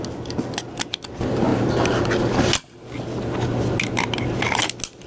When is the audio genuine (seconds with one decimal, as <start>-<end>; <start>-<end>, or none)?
0.0-5.1